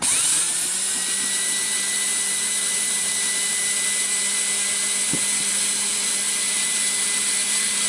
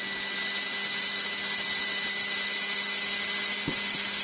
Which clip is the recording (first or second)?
second